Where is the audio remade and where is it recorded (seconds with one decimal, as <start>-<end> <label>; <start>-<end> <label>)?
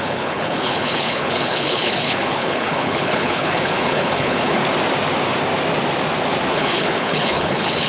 0.0-4.6 remade; 4.6-6.5 recorded; 6.5-7.9 remade